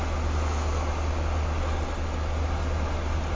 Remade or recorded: recorded